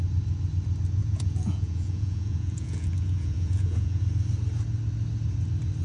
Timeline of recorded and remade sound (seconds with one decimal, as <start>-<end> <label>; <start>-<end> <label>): 0.0-1.0 recorded; 1.0-4.0 remade; 4.0-5.8 recorded